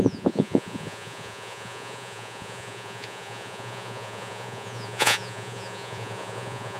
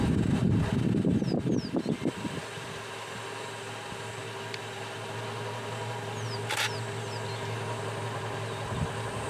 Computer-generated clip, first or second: first